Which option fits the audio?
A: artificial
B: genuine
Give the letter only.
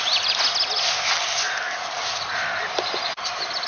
B